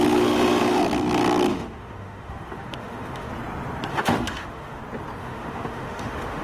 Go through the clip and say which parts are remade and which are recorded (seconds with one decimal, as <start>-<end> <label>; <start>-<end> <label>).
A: 0.0-1.5 recorded; 1.5-3.3 remade; 3.3-3.9 recorded; 3.9-4.8 remade; 4.8-5.2 recorded; 5.2-6.4 remade